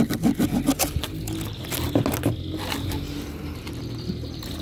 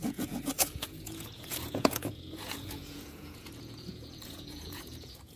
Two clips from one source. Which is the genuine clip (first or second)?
first